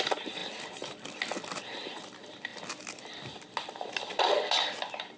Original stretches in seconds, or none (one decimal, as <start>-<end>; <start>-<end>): 0.0-5.2